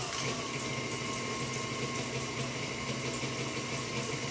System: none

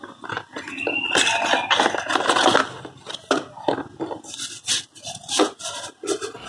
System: none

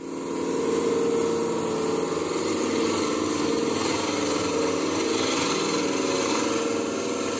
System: none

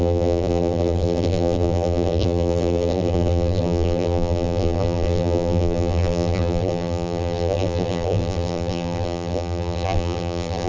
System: vocoder, BigVGAN v2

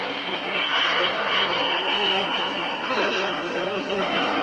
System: codec, SNAC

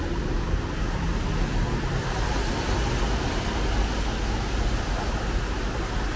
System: none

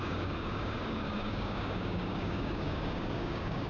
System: codec, DAC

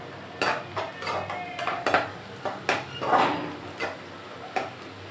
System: none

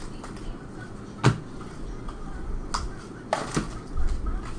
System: none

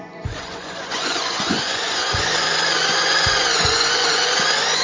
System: vocoder, Vocos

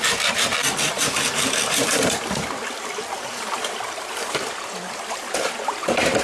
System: vocoder, BigVGAN v2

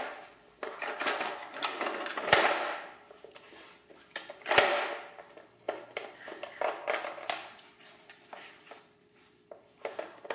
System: none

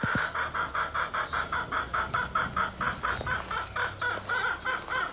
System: none